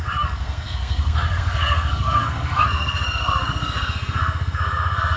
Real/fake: fake